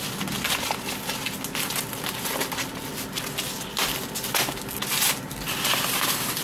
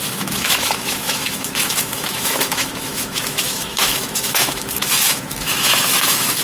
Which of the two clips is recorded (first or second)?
first